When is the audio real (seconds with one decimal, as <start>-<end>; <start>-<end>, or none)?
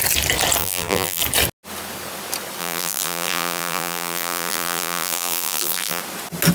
0.0-0.6; 1.2-2.6; 6.0-6.5